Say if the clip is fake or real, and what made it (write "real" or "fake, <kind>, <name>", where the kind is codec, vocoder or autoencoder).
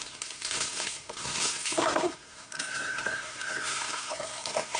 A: fake, codec, SNAC